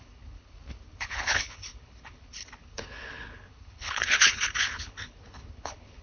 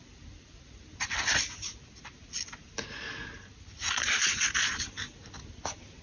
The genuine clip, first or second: second